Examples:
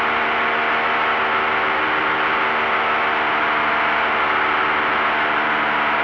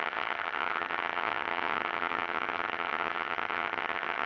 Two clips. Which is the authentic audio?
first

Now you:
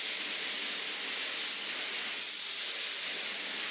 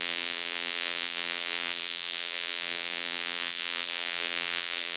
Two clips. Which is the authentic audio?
first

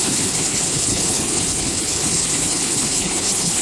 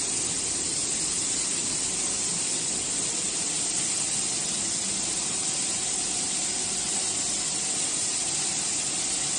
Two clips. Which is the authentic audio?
second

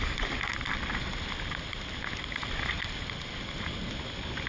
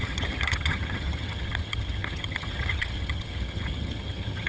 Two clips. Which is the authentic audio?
first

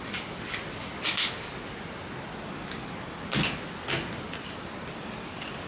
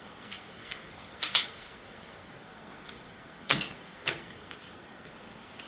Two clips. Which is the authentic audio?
first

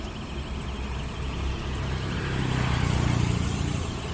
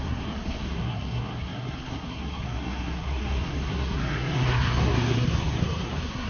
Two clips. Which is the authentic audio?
first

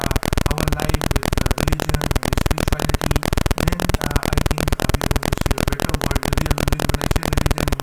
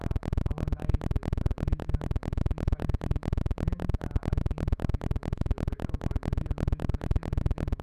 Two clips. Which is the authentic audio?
first